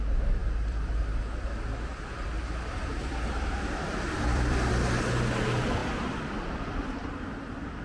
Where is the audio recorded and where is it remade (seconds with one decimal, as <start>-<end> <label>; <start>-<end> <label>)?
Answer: 0.0-0.4 recorded; 0.4-1.0 remade; 1.0-1.9 recorded; 1.9-4.7 remade; 4.7-5.8 recorded; 5.8-7.8 remade